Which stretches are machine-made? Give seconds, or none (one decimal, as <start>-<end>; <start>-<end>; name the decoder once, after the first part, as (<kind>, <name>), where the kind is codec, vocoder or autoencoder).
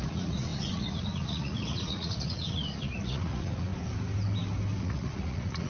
0.0-3.7 (vocoder, Vocos); 4.8-5.7